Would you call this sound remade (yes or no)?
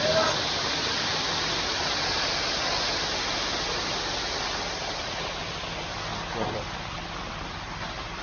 no